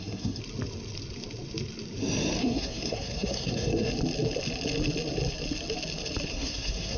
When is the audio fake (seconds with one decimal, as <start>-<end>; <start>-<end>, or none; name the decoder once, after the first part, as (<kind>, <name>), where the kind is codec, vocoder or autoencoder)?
0.0-0.4 (codec, SNAC); 2.4-3.9; 6.3-7.0